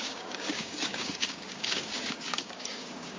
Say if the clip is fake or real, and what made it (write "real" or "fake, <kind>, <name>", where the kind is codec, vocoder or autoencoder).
fake, codec, DAC